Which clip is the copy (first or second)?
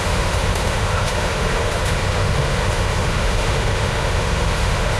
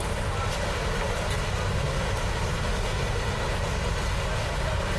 first